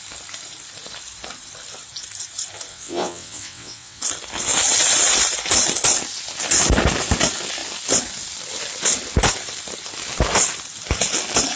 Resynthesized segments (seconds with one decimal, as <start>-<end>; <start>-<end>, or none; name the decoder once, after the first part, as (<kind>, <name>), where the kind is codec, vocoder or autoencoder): 2.7-4.0 (vocoder, WaveNeXt)